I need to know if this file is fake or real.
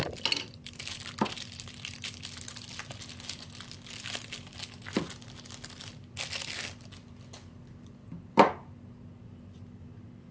real